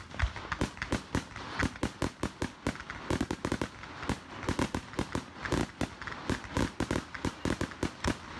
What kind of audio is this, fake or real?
real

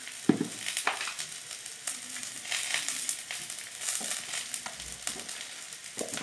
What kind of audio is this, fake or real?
real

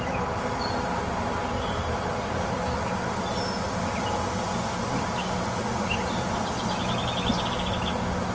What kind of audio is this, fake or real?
real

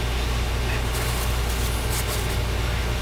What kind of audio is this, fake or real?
real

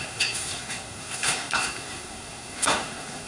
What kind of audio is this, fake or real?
fake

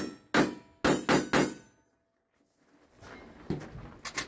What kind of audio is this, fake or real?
real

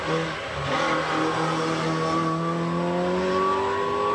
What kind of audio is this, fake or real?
real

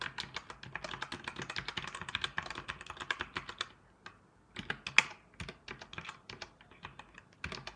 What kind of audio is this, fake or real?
real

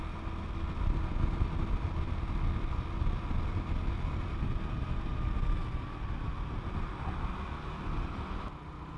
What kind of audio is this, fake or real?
real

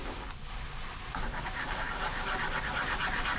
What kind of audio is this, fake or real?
real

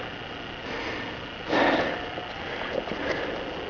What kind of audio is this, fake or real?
real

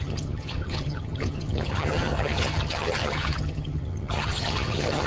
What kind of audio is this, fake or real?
fake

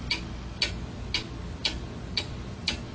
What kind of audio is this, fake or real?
real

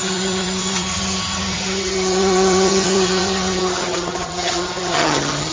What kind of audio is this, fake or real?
fake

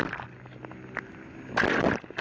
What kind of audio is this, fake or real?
real